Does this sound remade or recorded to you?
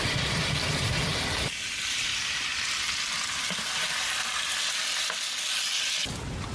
recorded